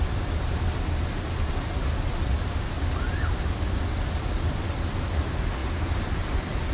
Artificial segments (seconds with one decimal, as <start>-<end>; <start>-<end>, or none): none